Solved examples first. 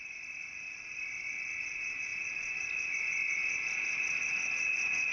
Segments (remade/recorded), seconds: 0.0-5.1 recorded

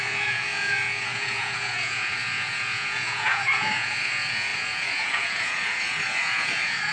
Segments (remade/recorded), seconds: 0.0-6.9 remade

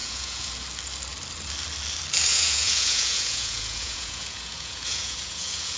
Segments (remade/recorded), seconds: 0.0-0.5 remade; 0.5-2.3 recorded; 2.3-5.8 remade

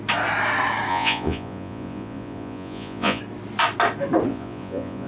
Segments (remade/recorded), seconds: 0.0-0.9 recorded; 0.9-3.2 remade; 3.2-4.3 recorded; 4.3-5.1 remade

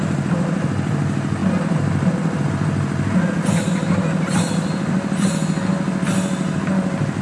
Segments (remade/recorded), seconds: 0.0-7.2 recorded

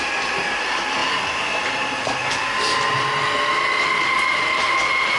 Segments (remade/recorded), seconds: 0.0-5.2 recorded

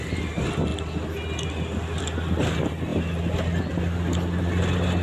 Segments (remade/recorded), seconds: 0.0-5.0 recorded